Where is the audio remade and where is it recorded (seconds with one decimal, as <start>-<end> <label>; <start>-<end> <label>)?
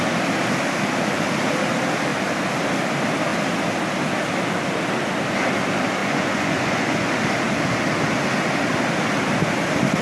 0.0-6.0 recorded; 6.0-7.1 remade; 7.1-10.0 recorded